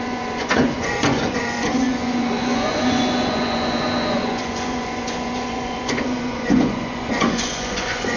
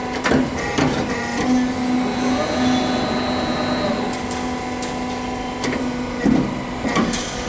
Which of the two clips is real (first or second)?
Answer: second